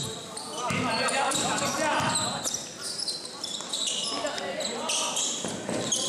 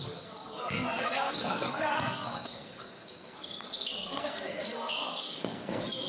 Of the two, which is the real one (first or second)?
first